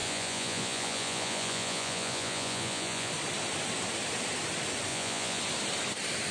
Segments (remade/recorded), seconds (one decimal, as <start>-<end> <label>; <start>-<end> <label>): 0.0-3.1 remade; 3.1-4.9 recorded; 4.9-5.4 remade; 5.4-6.3 recorded